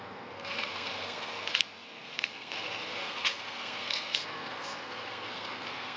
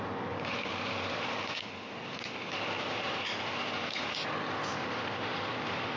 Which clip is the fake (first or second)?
first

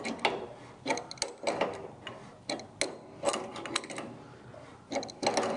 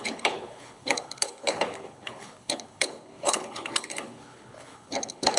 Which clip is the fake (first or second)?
second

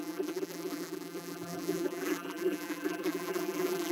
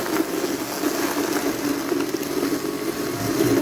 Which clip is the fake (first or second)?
first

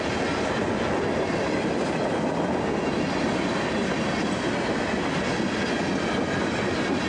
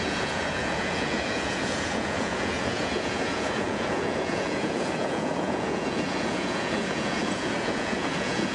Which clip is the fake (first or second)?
second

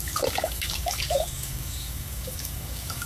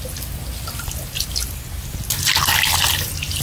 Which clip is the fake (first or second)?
first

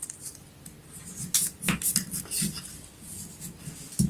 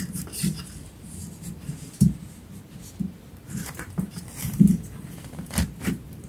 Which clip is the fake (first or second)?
second